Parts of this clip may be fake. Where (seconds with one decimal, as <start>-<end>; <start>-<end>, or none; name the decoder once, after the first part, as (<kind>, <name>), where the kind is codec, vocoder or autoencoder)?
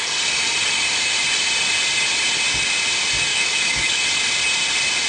3.3-4.0 (autoencoder, DAC-VAE)